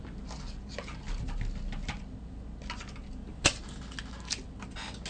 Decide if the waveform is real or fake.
real